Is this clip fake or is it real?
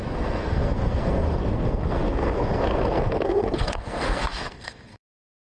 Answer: fake